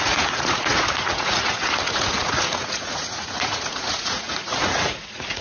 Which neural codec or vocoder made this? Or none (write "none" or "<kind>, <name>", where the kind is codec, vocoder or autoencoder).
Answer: vocoder, Vocos